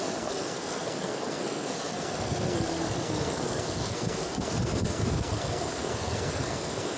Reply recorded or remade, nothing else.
remade